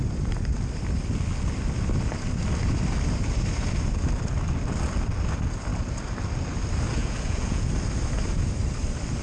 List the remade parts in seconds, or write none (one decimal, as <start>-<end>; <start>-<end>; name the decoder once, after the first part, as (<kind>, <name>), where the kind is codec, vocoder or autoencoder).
7.0-7.7 (vocoder, Vocos)